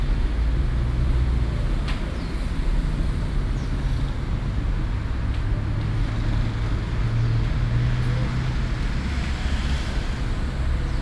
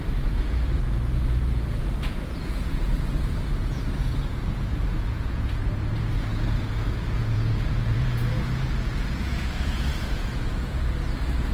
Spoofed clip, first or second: second